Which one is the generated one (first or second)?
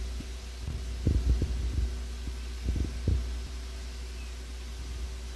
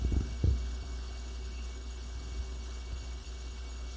second